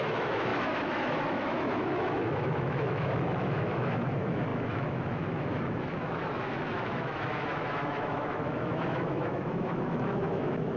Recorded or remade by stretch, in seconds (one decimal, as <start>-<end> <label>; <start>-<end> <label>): 0.0-10.8 remade